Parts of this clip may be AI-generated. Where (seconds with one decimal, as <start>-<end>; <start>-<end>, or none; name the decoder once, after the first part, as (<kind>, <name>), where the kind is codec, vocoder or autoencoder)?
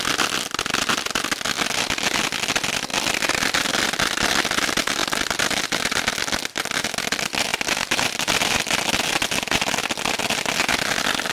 none